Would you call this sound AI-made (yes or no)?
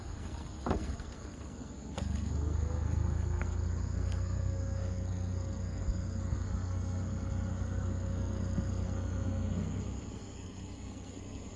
yes